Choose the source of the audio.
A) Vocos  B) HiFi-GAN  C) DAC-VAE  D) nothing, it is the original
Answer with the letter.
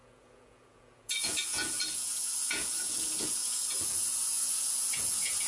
A